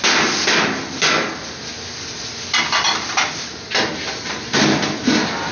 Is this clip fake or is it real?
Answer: real